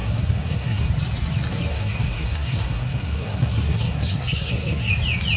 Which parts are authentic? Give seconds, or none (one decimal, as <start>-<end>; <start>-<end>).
0.9-1.7; 4.9-5.4

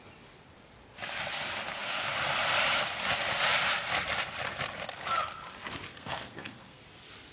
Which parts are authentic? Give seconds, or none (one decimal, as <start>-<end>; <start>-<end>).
0.0-5.9; 6.8-7.3

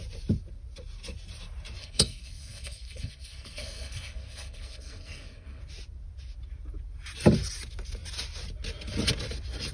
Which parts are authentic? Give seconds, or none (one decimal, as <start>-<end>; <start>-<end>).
0.0-1.8; 5.6-9.7

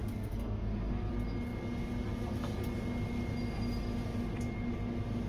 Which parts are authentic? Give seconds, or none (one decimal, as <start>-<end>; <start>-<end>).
1.1-5.3